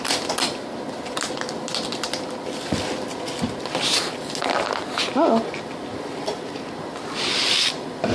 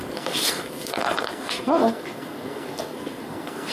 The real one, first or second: first